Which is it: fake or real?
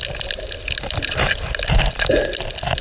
real